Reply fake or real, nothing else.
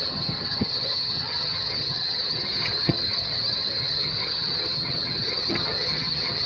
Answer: fake